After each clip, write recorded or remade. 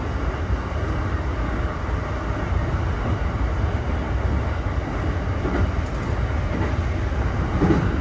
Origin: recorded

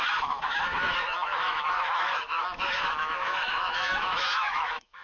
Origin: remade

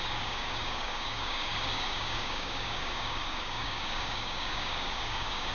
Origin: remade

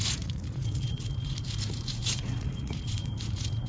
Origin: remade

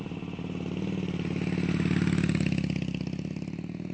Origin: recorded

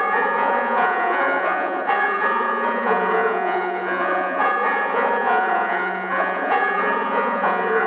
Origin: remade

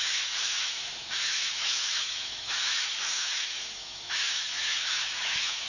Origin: remade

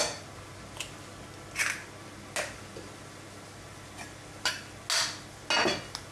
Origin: recorded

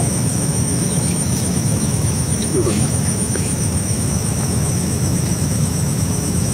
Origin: remade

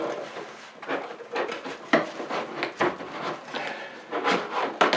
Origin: recorded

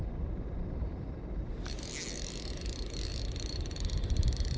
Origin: recorded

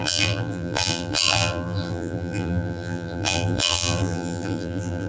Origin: remade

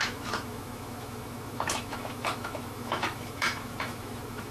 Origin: remade